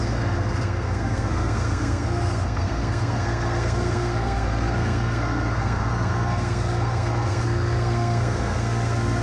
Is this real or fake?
fake